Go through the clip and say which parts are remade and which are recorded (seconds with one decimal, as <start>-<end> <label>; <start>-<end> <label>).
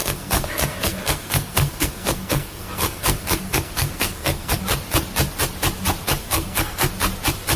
0.0-4.6 remade; 4.6-6.2 recorded; 6.2-6.9 remade; 6.9-7.6 recorded